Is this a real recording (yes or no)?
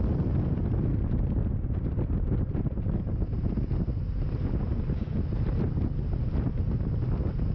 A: yes